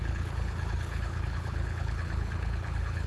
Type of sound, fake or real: fake